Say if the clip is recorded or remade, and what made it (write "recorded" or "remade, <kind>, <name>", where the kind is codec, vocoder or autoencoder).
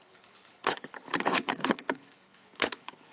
remade, codec, HILCodec